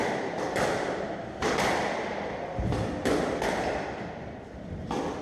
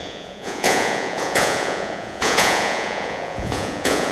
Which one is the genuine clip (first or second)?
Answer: first